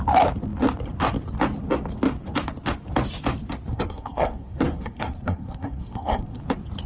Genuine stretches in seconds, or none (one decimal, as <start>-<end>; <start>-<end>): 0.0-3.7; 6.4-6.9

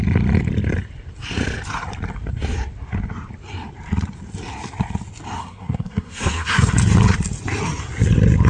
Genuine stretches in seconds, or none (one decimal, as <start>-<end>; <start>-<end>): 0.0-5.4; 6.7-8.5

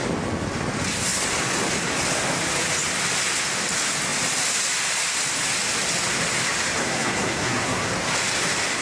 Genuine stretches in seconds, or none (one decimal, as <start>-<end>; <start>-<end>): 0.0-6.8; 7.9-8.8

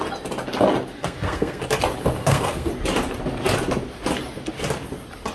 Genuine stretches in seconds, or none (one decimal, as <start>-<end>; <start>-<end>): 0.0-1.0; 1.6-2.2; 2.7-5.3